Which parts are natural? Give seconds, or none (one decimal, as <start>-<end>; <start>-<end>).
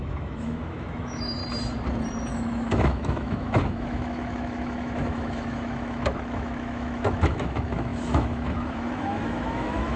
1.4-2.3